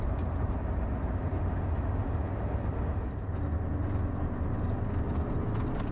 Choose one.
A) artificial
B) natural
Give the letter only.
B